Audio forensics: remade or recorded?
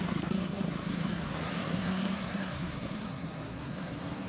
remade